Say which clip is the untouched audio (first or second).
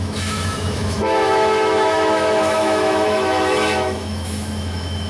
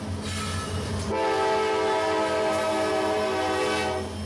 second